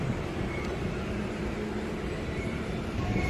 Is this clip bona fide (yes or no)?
no